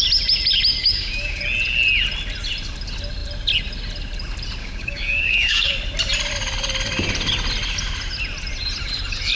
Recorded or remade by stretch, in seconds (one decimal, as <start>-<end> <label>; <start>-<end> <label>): 0.0-0.8 recorded; 0.8-1.4 remade; 1.4-4.6 recorded; 4.6-5.7 remade; 5.7-9.4 recorded